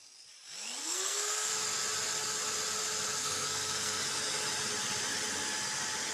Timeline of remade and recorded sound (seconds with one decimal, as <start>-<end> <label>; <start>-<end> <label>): 0.0-0.8 recorded; 0.8-1.5 remade; 1.5-3.2 recorded; 3.2-4.0 remade; 4.0-6.1 recorded